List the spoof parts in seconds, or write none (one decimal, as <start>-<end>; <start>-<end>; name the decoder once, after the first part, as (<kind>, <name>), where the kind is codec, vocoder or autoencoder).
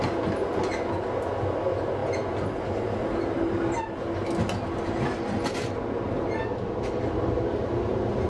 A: none